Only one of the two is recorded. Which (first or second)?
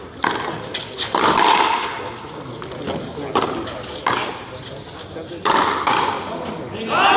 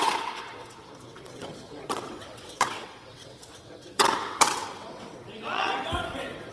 first